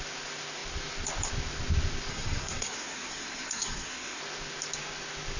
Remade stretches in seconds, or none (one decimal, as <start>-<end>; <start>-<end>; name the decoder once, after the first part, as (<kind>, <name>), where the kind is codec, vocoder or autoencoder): 2.1-4.2 (codec, SNAC)